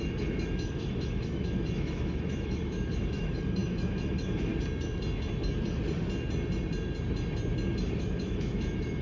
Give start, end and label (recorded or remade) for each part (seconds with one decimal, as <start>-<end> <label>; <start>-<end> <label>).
0.0-4.5 remade; 4.5-8.0 recorded; 8.0-9.0 remade